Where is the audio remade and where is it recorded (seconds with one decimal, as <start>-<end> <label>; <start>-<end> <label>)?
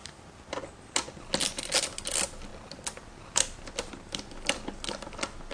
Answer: 0.0-0.6 remade; 0.6-2.5 recorded; 2.5-3.9 remade; 3.9-5.5 recorded